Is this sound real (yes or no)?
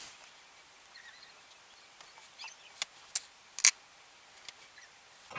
yes